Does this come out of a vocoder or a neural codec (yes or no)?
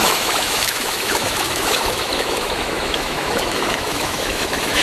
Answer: yes